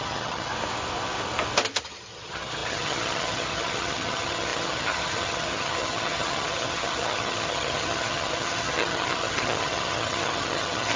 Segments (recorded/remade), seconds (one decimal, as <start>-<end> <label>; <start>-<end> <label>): 0.0-0.5 remade; 0.5-1.8 recorded; 1.8-11.0 remade